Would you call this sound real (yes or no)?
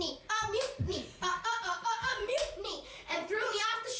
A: no